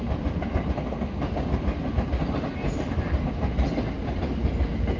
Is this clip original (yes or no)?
yes